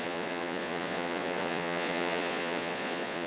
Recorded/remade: remade